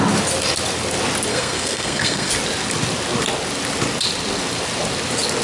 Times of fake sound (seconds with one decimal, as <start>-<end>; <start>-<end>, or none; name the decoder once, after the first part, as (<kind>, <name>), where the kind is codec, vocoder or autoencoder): 1.3-2.3 (codec, SNAC)